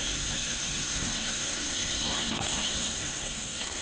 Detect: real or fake fake